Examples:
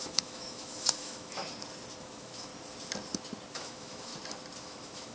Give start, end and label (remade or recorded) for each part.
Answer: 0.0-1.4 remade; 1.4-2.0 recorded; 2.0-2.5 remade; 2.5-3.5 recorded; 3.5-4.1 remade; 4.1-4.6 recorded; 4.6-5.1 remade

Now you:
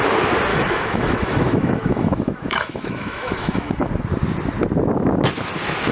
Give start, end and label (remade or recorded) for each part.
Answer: 0.0-0.5 recorded; 0.5-3.9 remade; 3.9-5.9 recorded

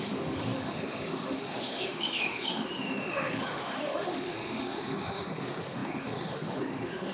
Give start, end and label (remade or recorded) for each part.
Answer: 0.0-7.1 remade

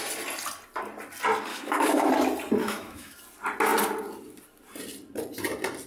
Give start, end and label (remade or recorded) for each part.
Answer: 0.0-1.5 recorded; 1.5-2.1 remade; 2.1-2.6 recorded; 2.6-3.2 remade; 3.2-5.9 recorded

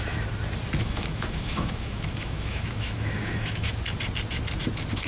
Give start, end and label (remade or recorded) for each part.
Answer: 0.0-0.8 recorded; 0.8-3.7 remade; 3.7-5.1 recorded

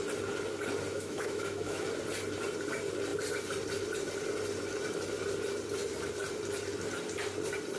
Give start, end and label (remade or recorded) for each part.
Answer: 0.0-0.9 recorded; 0.9-1.9 remade; 1.9-7.8 recorded

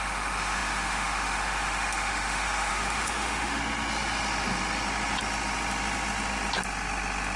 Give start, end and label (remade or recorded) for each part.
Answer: 0.0-3.6 remade; 3.6-7.4 recorded